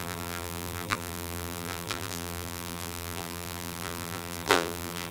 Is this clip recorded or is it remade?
remade